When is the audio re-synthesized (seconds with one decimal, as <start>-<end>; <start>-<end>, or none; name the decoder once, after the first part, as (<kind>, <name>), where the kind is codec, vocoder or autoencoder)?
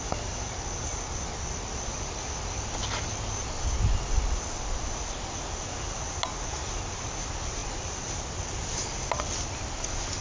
none